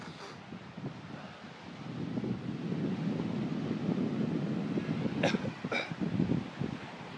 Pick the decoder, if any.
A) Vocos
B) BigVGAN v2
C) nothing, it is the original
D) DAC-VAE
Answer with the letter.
C